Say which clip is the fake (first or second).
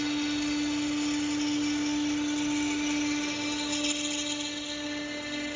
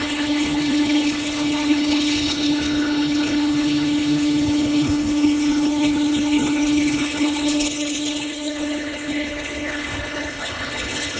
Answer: second